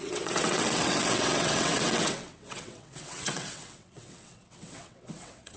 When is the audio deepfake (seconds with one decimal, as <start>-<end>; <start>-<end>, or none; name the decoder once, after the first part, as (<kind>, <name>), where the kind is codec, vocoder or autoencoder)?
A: 0.0-5.6 (vocoder, WaveNeXt)